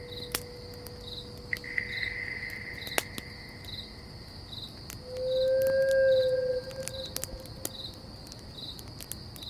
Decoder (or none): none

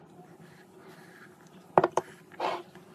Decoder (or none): vocoder, BigVGAN v2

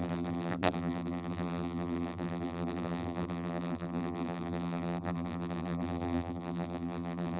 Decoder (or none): vocoder, BigVGAN v2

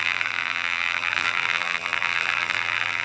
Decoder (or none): vocoder, BigVGAN v2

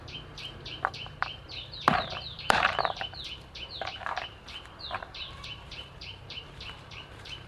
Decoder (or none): vocoder, BigVGAN v2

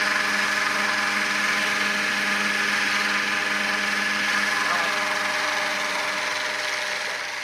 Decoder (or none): none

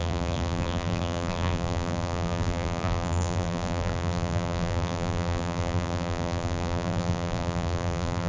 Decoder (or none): vocoder, BigVGAN v2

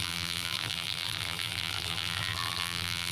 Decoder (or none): vocoder, BigVGAN v2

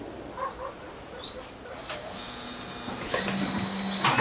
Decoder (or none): none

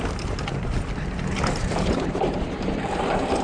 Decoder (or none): vocoder, BigVGAN v2